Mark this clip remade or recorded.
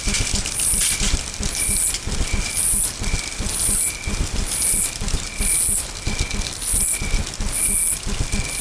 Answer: recorded